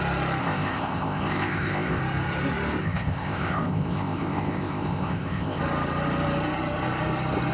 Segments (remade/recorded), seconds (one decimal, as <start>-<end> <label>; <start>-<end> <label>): 0.0-0.4 recorded; 0.4-2.0 remade; 2.0-2.8 recorded; 2.8-5.6 remade; 5.6-7.5 recorded